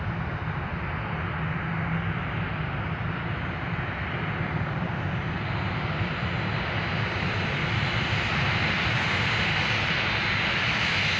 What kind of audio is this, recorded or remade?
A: recorded